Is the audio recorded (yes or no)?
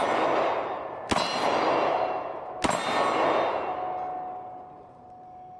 yes